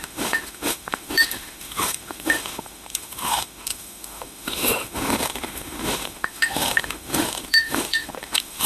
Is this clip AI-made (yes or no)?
yes